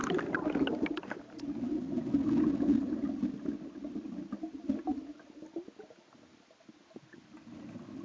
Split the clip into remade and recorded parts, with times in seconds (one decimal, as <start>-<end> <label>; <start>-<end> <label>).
0.0-8.0 recorded